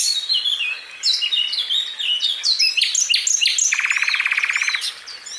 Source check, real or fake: real